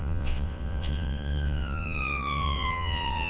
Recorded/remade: remade